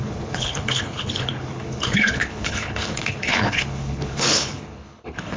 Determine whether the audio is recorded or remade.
remade